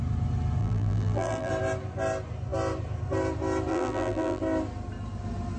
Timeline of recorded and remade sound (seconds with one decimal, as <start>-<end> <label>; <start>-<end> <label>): 0.0-0.6 recorded; 0.6-1.5 remade; 1.5-3.7 recorded; 3.7-4.4 remade; 4.4-5.6 recorded